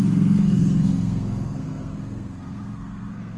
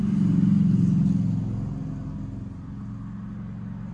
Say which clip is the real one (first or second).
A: second